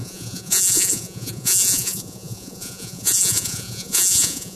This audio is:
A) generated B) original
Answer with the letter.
A